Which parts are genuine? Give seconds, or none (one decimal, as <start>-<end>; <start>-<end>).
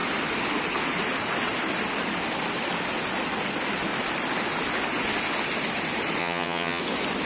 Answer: 0.0-6.2; 6.8-7.3